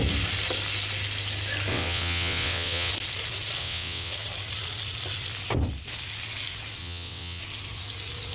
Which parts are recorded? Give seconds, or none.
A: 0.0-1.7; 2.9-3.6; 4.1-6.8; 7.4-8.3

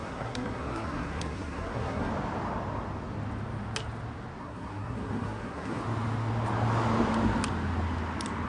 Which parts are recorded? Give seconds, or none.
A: 2.1-4.4; 5.8-8.5

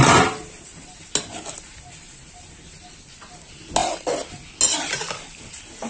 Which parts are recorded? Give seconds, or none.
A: 0.0-5.9

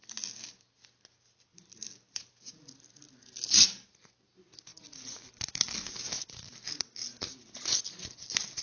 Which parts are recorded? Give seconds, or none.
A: 0.0-1.5; 3.9-8.6

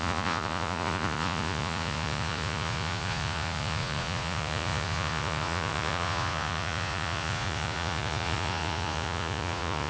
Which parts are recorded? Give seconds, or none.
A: none

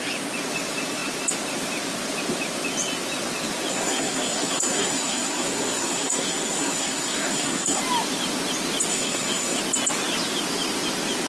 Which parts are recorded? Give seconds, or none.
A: 0.0-3.7; 7.8-8.9; 9.6-11.3

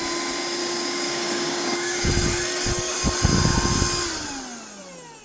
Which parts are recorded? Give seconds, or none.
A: 0.0-0.6; 2.1-5.2